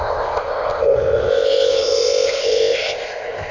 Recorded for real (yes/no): no